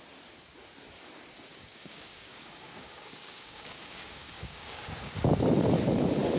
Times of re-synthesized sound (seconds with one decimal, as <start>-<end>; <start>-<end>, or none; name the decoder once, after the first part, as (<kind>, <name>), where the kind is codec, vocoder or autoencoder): 1.5-5.3 (codec, DAC)